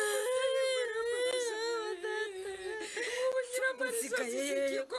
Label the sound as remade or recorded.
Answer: recorded